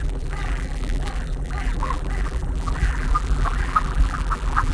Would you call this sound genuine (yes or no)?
no